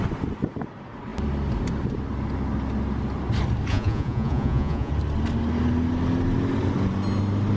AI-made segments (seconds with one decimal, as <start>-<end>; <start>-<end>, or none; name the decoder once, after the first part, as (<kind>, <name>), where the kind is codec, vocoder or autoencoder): 3.7-4.9 (vocoder, Vocos)